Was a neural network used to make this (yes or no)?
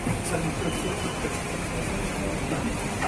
no